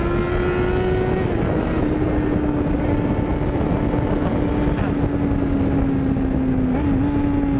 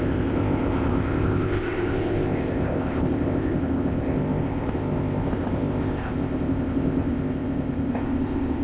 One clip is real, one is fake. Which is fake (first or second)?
second